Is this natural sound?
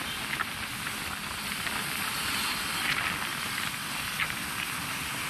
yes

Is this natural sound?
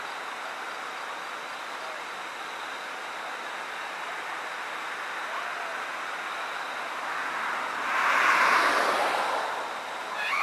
yes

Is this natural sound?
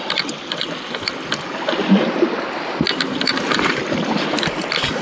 yes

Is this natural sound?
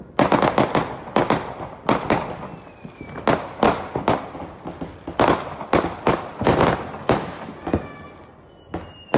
yes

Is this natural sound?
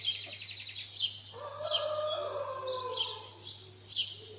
yes